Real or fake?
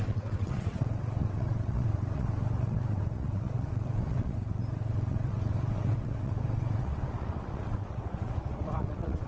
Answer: fake